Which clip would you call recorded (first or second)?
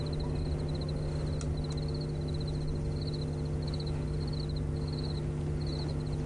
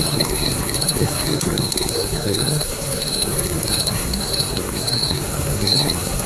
first